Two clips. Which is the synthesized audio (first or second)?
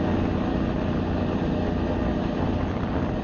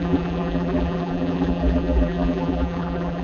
second